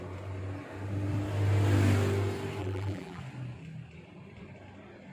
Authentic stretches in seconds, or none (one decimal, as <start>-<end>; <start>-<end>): 0.0-2.6; 3.2-5.1